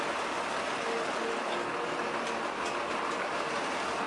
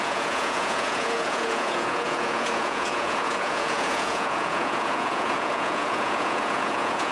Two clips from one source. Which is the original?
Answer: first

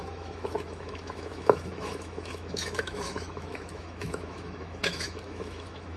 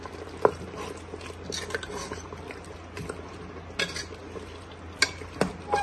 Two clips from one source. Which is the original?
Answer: second